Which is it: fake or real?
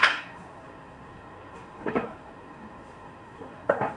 fake